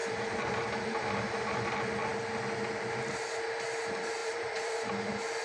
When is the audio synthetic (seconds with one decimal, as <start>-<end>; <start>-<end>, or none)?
0.0-1.6; 4.2-4.9